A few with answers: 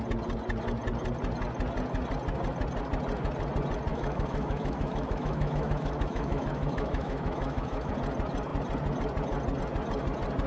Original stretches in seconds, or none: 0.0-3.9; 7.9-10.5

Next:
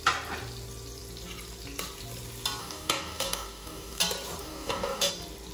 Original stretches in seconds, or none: 0.0-2.6; 4.0-4.4; 5.1-5.5

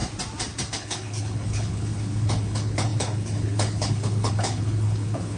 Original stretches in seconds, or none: 0.0-0.7